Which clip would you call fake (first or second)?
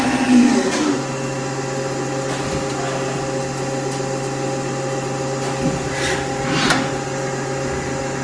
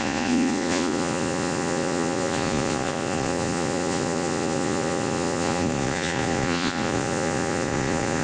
second